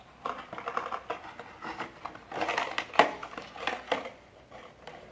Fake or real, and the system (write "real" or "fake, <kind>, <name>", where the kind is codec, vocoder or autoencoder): real